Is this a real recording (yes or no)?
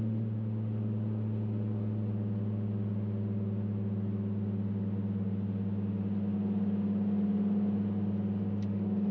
yes